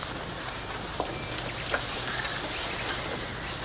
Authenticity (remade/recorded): recorded